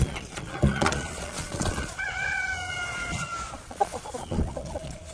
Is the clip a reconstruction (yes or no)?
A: yes